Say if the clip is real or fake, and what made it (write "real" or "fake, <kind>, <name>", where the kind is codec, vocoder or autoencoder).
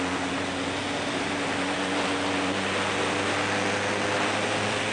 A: real